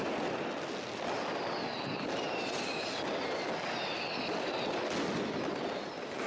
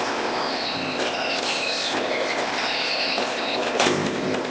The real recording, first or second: first